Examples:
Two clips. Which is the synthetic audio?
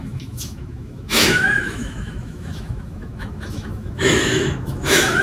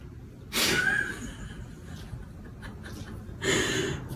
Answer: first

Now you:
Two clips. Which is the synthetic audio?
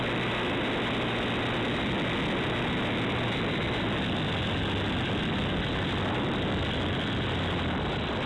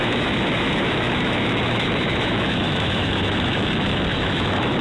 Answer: second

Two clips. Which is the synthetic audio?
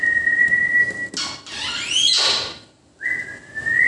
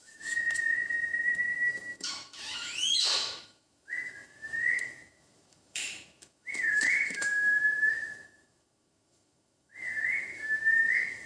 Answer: second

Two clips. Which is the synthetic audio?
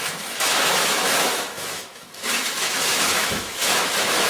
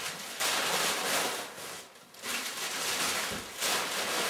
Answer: first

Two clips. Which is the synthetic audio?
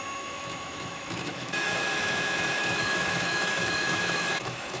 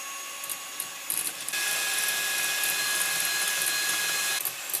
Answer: first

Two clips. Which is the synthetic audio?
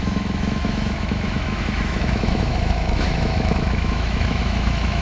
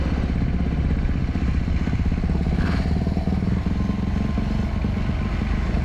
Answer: first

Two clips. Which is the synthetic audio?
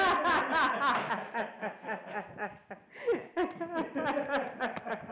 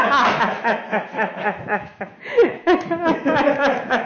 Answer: second